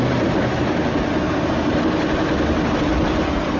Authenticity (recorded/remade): recorded